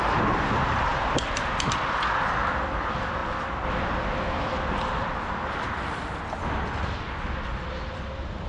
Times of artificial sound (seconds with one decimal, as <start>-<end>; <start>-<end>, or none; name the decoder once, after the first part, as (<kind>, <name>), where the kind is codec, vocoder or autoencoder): none